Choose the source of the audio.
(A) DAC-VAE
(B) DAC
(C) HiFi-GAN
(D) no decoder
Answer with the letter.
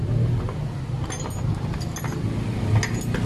D